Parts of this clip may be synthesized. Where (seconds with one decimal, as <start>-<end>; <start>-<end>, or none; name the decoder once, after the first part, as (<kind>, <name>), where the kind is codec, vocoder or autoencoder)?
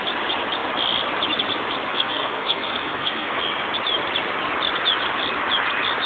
1.9-3.4 (codec, SNAC)